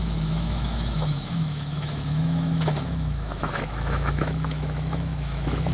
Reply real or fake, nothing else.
fake